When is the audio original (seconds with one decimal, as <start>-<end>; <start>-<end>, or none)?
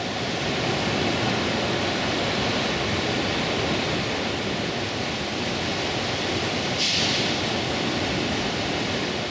0.0-9.3